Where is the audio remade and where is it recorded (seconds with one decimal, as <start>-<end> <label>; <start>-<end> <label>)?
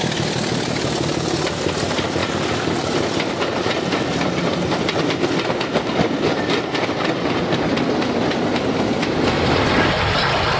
0.0-10.6 recorded